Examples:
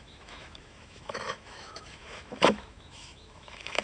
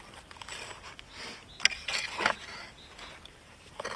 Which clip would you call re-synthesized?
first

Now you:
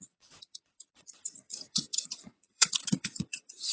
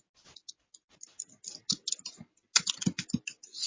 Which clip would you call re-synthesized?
first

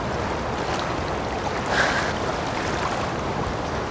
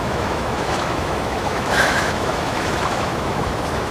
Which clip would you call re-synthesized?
second